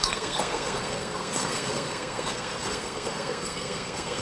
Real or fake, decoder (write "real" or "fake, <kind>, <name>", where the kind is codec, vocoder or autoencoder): fake, codec, SNAC